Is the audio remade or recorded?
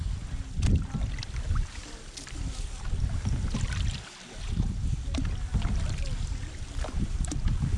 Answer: recorded